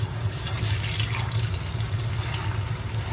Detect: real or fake real